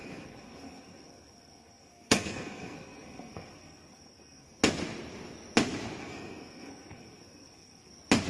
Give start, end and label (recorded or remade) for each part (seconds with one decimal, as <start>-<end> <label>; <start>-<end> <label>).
0.0-4.6 remade; 4.6-6.0 recorded; 6.0-7.9 remade; 7.9-8.3 recorded